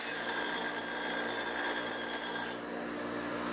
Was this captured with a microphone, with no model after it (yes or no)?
yes